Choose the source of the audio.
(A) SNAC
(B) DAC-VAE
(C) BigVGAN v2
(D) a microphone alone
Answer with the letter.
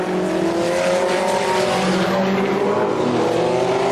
D